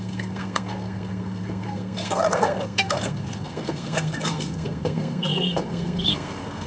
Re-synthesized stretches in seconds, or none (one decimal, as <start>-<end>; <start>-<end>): 0.0-6.7